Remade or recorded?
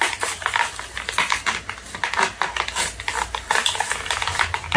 recorded